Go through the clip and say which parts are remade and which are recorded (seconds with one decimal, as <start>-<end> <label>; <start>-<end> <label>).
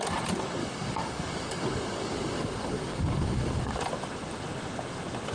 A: 0.0-0.6 recorded; 0.6-3.8 remade; 3.8-5.3 recorded